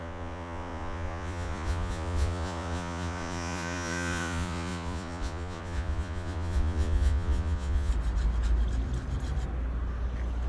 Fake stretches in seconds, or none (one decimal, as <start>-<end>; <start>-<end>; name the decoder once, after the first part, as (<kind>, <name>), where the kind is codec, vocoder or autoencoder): 0.0-7.9 (vocoder, Vocos)